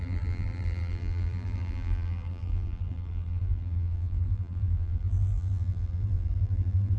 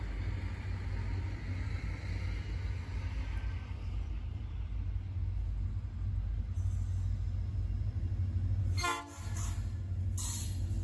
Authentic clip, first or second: second